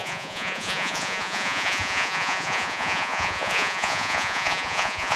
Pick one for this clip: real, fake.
fake